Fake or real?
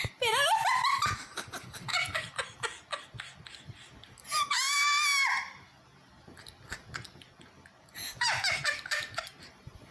real